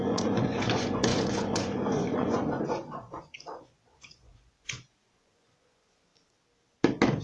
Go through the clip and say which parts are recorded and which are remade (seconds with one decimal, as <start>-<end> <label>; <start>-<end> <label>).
0.0-6.1 remade; 6.1-7.2 recorded